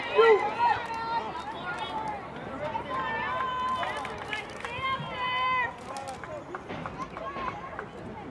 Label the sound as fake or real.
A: real